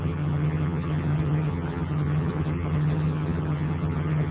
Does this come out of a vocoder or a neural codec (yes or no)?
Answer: yes